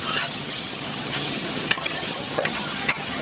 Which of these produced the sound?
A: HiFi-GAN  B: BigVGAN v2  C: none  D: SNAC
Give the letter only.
A